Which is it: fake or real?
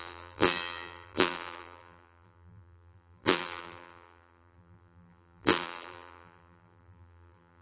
fake